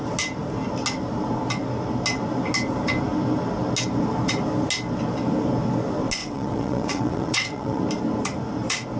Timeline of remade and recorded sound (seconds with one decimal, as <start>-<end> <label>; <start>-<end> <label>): 0.0-6.2 recorded; 6.2-7.8 remade; 7.8-9.0 recorded